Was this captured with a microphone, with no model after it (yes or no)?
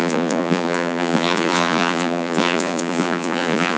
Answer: no